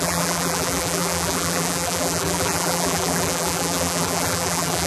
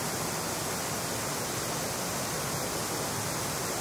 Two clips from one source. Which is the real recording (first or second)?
second